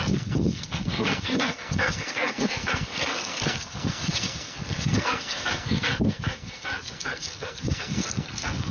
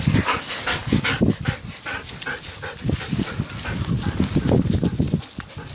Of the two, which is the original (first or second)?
second